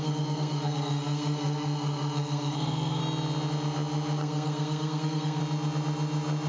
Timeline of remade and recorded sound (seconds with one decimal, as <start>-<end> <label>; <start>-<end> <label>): 0.0-3.0 remade; 3.0-4.2 recorded; 4.2-5.4 remade; 5.4-6.5 recorded